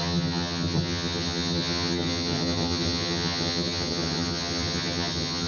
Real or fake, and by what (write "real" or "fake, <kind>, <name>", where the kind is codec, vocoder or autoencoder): fake, vocoder, HiFi-GAN